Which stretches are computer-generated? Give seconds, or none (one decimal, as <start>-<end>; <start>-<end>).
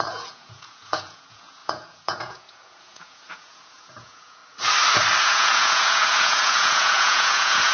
0.0-4.4; 5.2-7.7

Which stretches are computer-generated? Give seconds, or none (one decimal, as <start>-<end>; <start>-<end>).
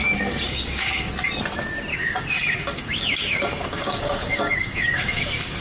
0.0-1.1; 1.9-5.6